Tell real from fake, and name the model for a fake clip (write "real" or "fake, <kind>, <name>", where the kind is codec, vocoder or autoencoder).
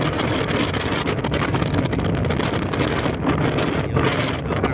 real